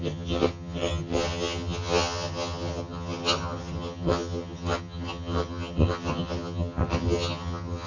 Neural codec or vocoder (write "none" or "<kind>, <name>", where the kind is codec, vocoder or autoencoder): vocoder, HiFi-GAN